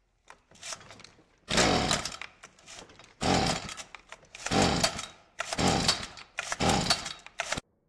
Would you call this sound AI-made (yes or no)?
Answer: no